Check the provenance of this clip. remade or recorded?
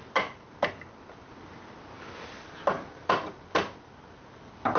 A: recorded